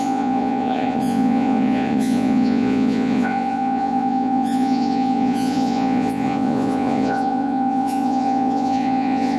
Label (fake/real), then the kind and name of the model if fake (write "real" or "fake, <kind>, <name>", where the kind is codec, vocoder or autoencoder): fake, vocoder, Vocos